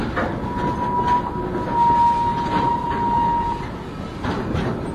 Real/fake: real